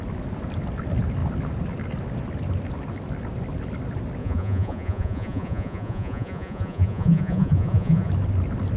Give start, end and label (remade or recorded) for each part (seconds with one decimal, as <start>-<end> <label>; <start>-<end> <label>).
0.0-4.2 recorded; 4.2-8.1 remade; 8.1-8.8 recorded